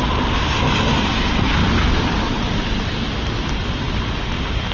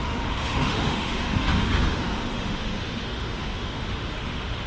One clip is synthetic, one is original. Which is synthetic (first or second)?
second